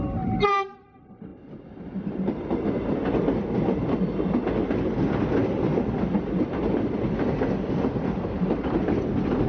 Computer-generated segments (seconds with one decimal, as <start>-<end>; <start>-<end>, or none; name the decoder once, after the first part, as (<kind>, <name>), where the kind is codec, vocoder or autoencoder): 0.0-1.3 (vocoder, BigVGAN v2); 6.4-9.5